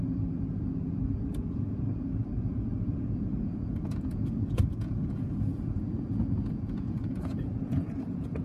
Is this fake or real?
fake